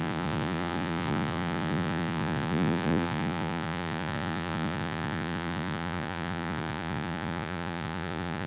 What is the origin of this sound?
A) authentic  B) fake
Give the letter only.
B